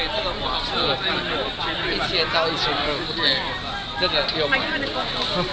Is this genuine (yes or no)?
yes